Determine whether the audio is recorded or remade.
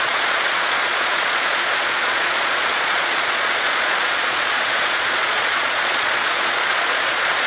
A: remade